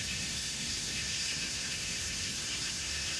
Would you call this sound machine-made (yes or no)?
yes